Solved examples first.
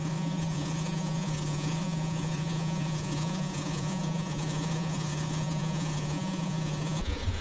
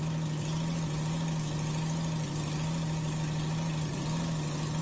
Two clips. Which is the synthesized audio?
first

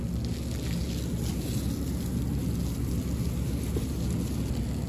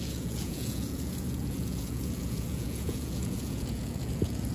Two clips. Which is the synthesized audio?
second